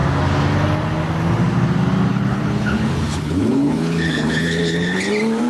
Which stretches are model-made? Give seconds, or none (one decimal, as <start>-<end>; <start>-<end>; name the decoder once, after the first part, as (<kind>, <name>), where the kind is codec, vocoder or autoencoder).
2.1-5.1 (codec, HILCodec)